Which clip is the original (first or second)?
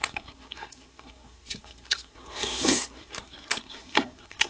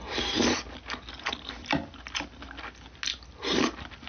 second